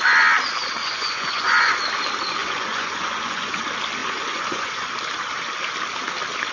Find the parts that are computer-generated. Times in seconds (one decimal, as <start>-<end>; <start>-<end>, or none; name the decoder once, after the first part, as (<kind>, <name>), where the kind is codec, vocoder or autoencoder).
0.8-1.7 (vocoder, Vocos); 2.4-3.6; 4.0-4.9